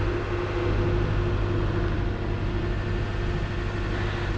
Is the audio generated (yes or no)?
no